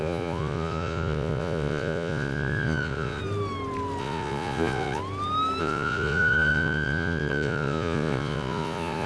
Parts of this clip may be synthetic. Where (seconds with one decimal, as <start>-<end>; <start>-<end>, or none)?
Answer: 0.0-3.2; 4.0-5.0; 5.6-9.1

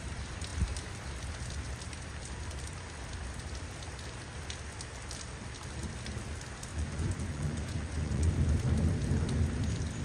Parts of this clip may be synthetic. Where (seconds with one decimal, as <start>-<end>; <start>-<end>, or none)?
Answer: 6.7-8.3

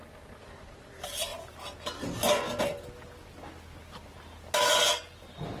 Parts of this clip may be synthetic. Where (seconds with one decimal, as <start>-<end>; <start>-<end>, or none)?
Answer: none

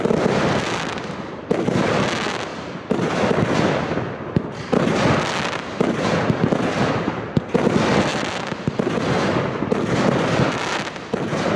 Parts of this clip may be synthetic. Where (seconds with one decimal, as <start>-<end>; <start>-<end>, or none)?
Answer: none